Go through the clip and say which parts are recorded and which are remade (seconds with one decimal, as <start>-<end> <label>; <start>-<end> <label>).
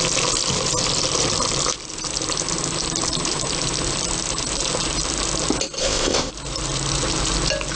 0.0-5.8 recorded; 5.8-6.3 remade; 6.3-7.8 recorded